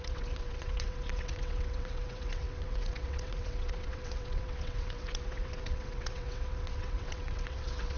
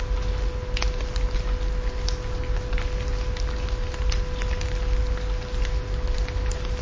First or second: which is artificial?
first